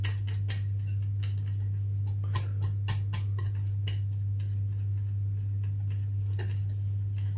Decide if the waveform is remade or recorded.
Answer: recorded